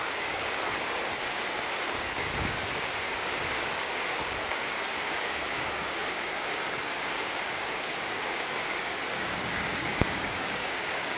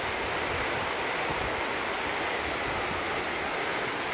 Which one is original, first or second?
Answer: second